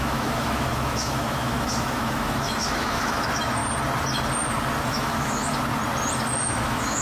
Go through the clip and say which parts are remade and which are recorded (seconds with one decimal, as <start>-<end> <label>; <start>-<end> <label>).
0.0-3.6 remade; 3.6-4.8 recorded; 4.8-5.5 remade; 5.5-6.4 recorded; 6.4-7.0 remade